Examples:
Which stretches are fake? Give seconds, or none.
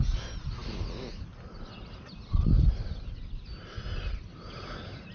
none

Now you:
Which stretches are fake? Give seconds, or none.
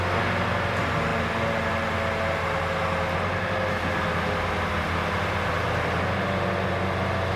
none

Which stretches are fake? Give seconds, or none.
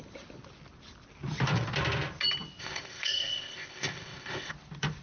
2.6-4.5 (codec, ZipCodec)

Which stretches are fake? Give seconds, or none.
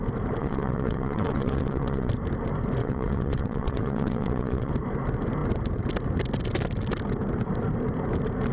0.4-2.1 (vocoder, WaveNeXt); 2.8-4.7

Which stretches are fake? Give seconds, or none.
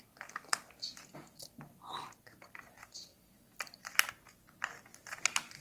none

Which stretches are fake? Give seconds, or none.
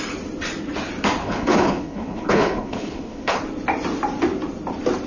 1.2-3.4 (codec, HILCodec)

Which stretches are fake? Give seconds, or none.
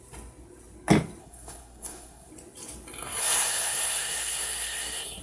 1.2-2.3 (codec, SNAC); 3.2-5.2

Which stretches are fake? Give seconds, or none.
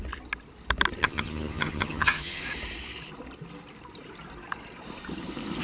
1.0-2.4 (vocoder, HiFi-GAN)